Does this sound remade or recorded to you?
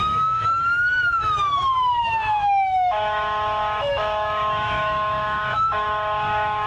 remade